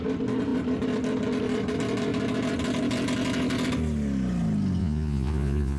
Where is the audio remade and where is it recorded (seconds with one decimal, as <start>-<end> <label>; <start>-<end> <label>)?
0.0-4.8 recorded; 4.8-5.8 remade